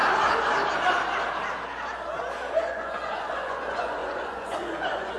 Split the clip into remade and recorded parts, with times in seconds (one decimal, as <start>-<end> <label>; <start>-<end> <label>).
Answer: 0.0-2.6 recorded; 2.6-5.2 remade

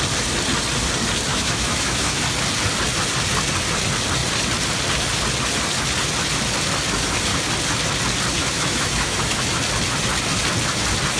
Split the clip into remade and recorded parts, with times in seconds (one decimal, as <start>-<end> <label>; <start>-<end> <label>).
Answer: 0.0-1.3 recorded; 1.3-2.2 remade; 2.2-8.4 recorded; 8.4-9.5 remade; 9.5-11.2 recorded